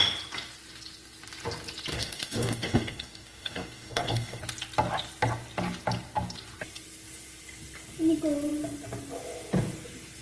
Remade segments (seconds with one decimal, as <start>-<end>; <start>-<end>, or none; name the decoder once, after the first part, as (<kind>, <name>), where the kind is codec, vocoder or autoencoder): 1.9-4.4 (codec, DAC)